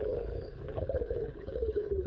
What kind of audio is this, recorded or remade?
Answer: remade